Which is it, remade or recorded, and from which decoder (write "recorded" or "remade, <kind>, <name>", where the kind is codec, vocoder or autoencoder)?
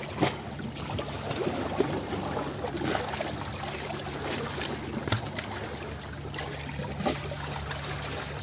recorded